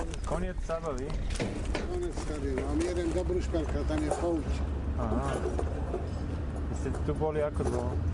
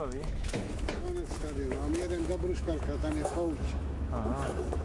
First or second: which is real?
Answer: first